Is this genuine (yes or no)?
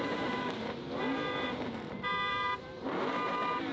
no